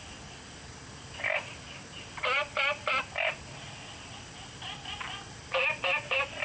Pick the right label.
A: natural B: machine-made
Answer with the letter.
B